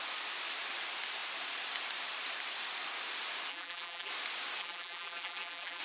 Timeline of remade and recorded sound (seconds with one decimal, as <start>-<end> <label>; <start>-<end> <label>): 0.0-3.5 recorded; 3.5-4.1 remade; 4.1-4.6 recorded; 4.6-5.8 remade